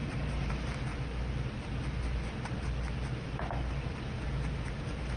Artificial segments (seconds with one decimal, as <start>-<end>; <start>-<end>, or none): 0.0-0.5